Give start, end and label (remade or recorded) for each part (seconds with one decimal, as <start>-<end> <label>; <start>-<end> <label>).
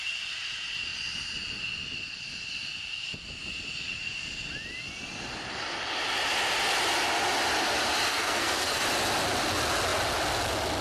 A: 0.0-8.1 recorded; 8.1-8.8 remade; 8.8-10.8 recorded